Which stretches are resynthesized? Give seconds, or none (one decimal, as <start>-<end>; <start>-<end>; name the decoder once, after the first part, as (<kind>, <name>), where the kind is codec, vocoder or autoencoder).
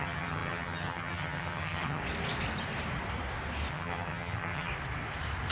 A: 0.0-2.0 (vocoder, HiFi-GAN); 3.7-4.7